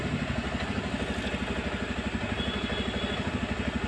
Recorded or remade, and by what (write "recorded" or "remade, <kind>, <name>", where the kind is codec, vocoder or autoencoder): recorded